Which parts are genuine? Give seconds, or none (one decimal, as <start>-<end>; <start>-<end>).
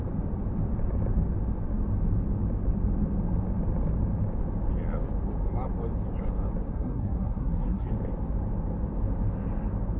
0.0-6.7; 7.9-10.0